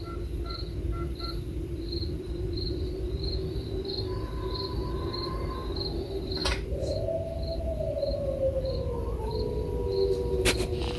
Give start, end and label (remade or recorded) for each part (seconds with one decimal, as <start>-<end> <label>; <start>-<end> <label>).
0.0-11.0 recorded